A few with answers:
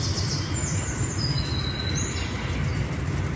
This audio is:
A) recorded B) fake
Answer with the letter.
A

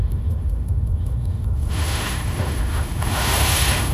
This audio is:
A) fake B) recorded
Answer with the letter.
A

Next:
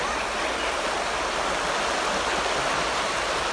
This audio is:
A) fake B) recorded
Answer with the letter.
B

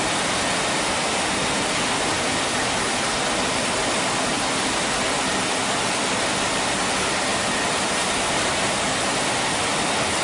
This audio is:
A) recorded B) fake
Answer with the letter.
A